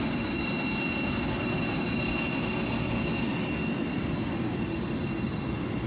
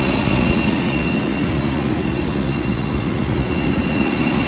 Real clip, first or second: first